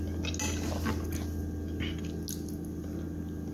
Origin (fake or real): real